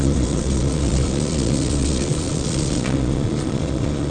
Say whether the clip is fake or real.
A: fake